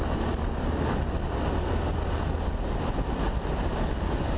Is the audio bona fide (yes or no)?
yes